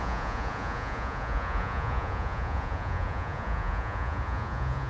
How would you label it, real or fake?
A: fake